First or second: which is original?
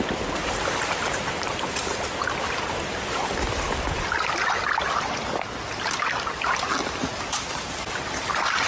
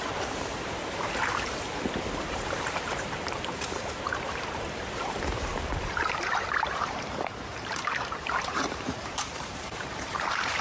first